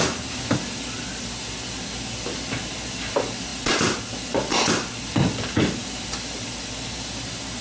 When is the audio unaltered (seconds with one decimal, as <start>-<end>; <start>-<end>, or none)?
0.0-7.6